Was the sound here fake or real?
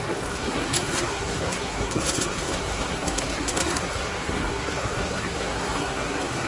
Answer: fake